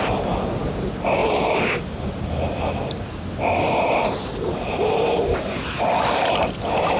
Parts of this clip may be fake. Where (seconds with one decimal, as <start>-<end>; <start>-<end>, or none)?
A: none